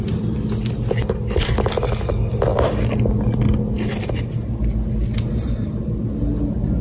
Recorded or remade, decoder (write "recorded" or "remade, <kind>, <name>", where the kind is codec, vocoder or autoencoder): recorded